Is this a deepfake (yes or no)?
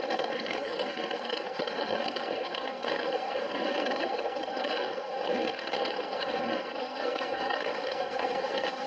yes